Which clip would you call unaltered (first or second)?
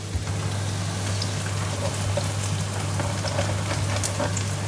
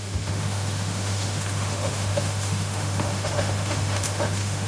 first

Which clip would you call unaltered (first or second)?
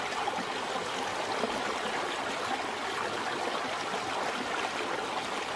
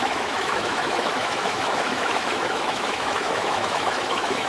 first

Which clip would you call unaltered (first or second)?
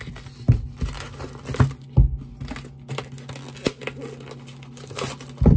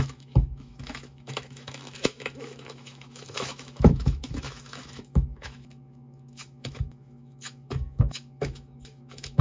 first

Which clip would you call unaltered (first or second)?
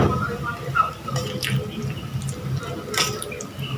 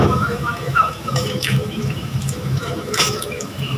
first